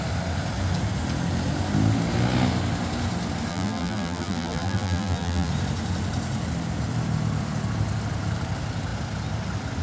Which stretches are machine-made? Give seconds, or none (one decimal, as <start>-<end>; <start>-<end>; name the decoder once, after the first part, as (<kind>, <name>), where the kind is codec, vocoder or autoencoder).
3.5-5.5 (vocoder, BigVGAN v2)